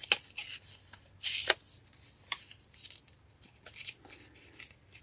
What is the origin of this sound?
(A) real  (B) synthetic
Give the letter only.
A